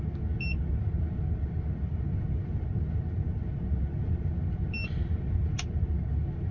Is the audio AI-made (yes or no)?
no